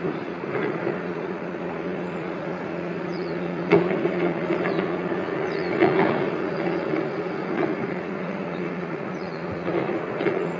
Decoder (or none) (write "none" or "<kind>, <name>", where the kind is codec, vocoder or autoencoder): vocoder, Vocos